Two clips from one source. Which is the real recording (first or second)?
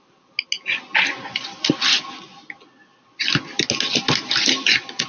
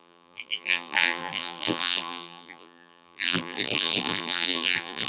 first